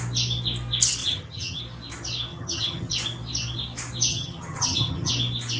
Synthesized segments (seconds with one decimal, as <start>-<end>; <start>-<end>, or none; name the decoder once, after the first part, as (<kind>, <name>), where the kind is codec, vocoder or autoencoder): 1.0-1.6 (vocoder, HiFi-GAN); 2.3-2.9; 4.1-5.1